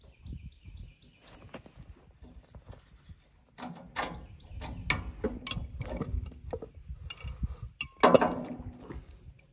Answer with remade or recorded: recorded